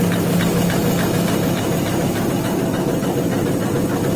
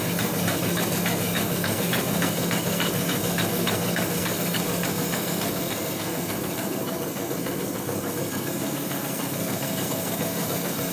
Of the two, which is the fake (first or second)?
second